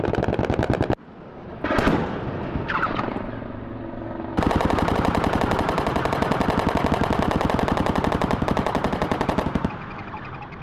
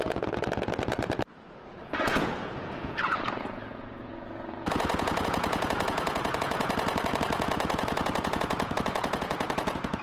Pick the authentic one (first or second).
first